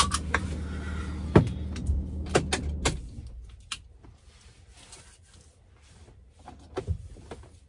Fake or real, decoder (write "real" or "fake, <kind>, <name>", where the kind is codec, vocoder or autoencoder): real